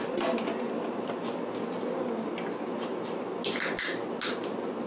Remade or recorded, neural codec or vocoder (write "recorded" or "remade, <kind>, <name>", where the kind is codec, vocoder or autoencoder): recorded